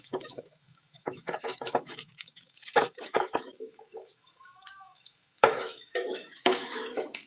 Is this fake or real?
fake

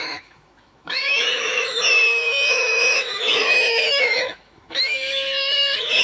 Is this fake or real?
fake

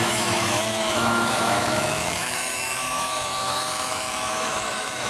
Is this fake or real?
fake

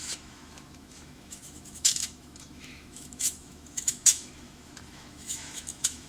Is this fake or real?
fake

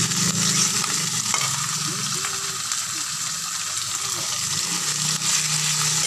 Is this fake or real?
real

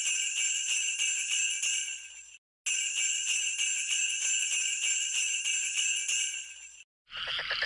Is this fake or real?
real